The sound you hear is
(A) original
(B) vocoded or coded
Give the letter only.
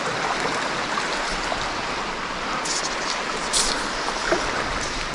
A